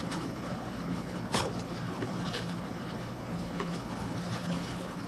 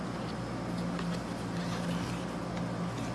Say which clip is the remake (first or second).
first